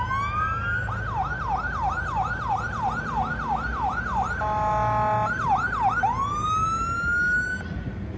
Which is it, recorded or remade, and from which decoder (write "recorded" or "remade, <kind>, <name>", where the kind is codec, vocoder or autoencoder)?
recorded